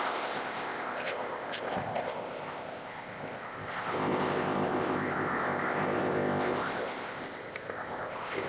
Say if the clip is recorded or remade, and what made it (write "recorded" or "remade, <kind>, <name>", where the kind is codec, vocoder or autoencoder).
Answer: remade, codec, ZipCodec